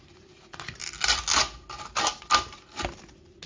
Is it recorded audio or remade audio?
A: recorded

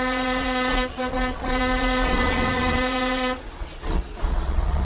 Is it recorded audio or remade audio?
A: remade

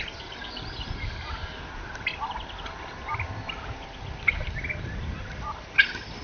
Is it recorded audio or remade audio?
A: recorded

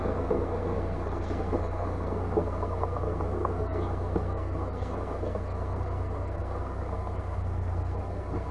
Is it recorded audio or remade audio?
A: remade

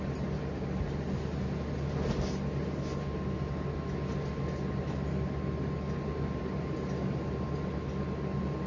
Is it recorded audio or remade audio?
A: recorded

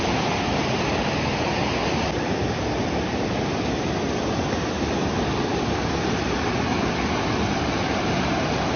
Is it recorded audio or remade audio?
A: recorded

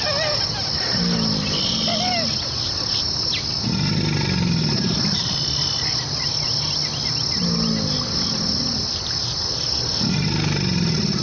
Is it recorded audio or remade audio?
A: recorded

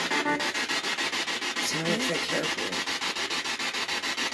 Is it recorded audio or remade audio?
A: recorded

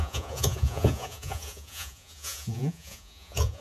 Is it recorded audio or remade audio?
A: remade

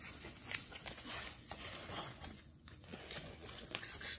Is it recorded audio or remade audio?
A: remade